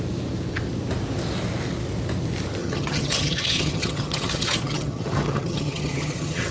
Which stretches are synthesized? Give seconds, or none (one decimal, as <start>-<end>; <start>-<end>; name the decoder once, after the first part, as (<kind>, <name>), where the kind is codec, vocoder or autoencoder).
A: 2.6-6.5 (vocoder, HiFi-GAN)